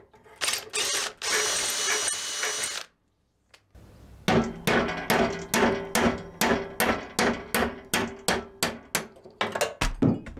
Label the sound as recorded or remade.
recorded